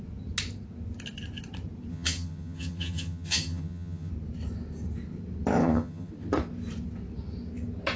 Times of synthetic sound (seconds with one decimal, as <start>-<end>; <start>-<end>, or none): 1.9-4.1; 5.6-6.1